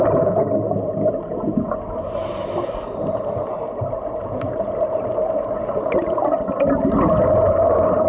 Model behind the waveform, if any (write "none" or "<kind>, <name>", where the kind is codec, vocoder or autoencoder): none